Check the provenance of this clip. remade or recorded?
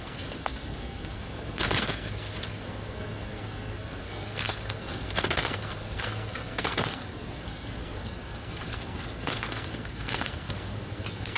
remade